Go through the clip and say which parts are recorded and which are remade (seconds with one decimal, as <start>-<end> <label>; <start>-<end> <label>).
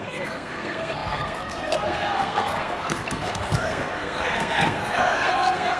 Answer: 0.0-5.8 remade